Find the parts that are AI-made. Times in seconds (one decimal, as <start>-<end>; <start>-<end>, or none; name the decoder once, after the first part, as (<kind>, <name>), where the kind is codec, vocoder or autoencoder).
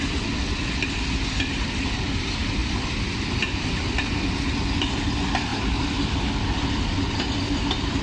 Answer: none